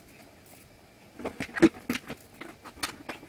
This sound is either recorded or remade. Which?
recorded